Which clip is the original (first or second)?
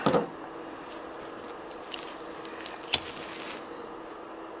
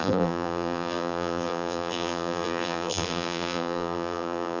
first